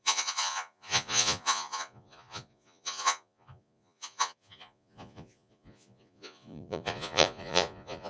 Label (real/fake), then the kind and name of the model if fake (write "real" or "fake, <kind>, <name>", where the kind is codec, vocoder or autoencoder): fake, vocoder, Vocos